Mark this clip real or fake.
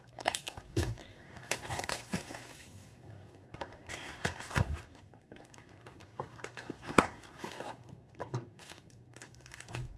fake